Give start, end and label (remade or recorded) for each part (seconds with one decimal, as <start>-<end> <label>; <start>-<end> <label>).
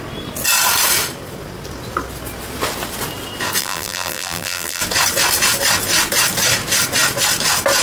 0.0-3.6 recorded; 3.6-4.8 remade; 4.8-7.8 recorded